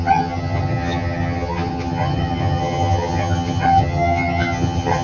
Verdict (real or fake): fake